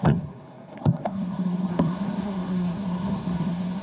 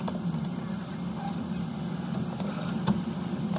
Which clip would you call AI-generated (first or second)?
first